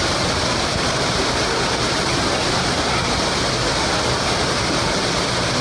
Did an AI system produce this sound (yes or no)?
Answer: no